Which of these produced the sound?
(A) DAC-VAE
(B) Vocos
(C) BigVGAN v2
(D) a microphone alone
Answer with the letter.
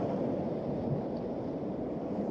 D